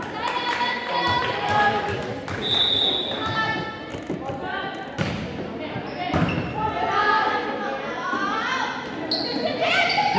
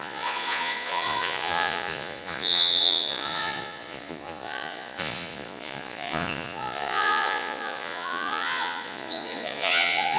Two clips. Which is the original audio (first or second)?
first